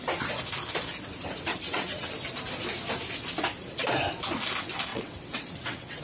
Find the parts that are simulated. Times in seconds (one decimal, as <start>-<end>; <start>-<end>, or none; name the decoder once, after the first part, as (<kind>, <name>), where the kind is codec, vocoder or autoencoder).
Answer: 1.5-2.1 (vocoder, WaveNeXt); 4.9-6.0